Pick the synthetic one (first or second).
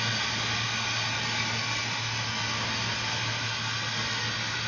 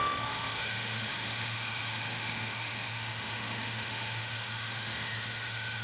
second